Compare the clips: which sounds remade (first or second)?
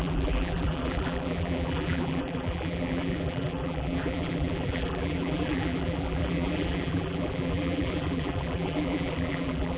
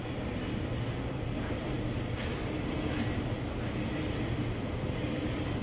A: first